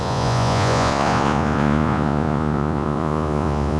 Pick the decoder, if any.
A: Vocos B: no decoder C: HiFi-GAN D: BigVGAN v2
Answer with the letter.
A